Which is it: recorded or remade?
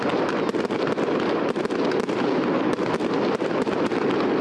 recorded